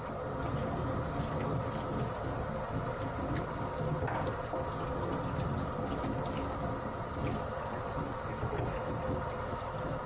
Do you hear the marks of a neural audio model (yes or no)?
no